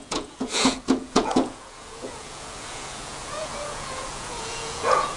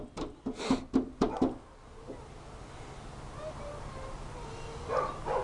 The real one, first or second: second